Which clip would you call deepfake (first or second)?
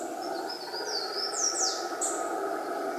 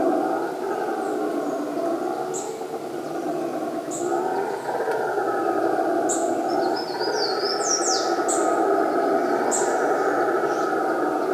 first